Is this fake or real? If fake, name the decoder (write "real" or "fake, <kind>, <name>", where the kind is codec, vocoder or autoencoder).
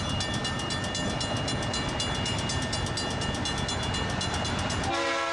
real